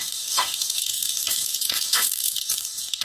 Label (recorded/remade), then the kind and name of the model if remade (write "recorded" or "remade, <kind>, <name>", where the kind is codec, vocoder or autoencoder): remade, codec, DAC